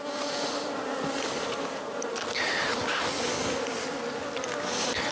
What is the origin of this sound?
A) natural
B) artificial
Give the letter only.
A